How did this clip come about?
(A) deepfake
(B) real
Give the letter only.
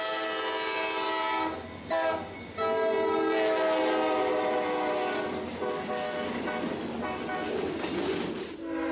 B